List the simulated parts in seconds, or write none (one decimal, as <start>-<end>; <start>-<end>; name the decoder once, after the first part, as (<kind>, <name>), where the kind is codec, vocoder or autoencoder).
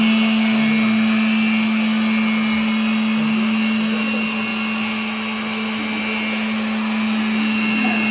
none